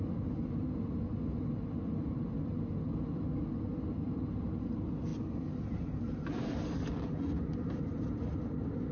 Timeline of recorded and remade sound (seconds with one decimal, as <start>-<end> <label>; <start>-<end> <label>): 0.0-8.9 recorded